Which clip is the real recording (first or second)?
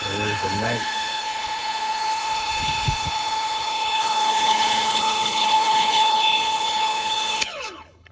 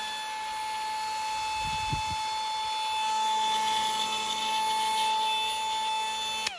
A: second